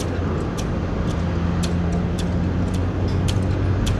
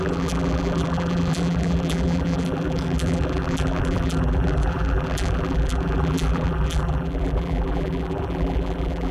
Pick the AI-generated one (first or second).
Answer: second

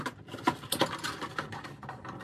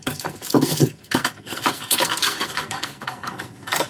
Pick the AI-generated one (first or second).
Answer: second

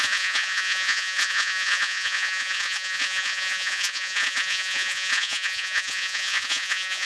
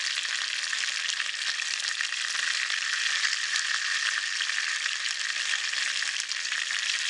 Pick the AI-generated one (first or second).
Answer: first